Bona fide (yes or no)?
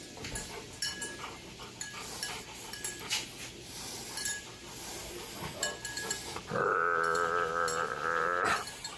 yes